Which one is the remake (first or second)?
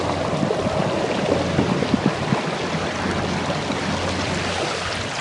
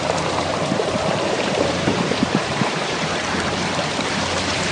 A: second